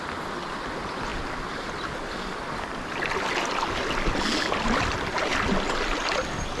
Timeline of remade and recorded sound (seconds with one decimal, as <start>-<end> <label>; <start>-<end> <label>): 0.0-6.6 recorded